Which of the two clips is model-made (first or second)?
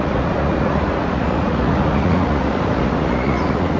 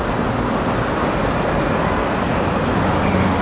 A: first